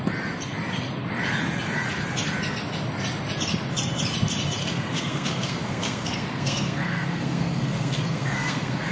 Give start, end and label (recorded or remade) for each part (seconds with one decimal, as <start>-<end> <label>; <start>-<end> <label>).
0.0-4.6 recorded; 4.6-8.9 remade